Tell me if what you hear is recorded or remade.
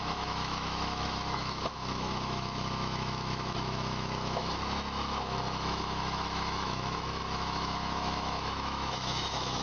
remade